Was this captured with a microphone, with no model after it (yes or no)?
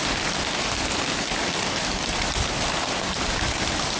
no